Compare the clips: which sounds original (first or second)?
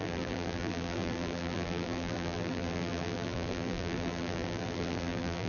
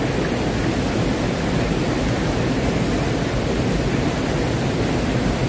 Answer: second